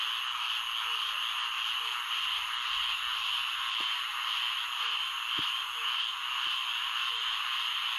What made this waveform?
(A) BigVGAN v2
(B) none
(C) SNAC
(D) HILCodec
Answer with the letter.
B